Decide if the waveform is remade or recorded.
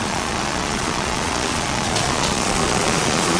remade